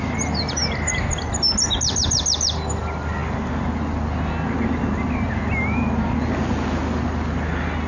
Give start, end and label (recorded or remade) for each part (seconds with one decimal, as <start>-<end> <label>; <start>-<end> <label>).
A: 0.0-7.9 recorded